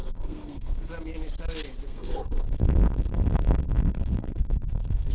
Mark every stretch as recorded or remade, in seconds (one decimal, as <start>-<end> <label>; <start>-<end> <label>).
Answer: 0.0-0.9 remade; 0.9-1.9 recorded; 1.9-5.1 remade